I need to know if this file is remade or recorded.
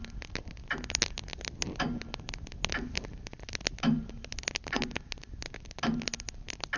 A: recorded